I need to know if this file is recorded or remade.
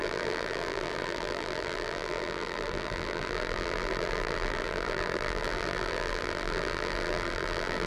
remade